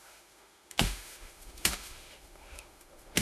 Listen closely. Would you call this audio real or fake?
fake